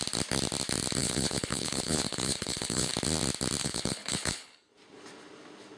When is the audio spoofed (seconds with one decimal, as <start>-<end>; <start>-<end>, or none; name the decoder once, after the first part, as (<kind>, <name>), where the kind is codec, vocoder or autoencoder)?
1.0-2.9 (codec, HILCodec); 3.6-4.7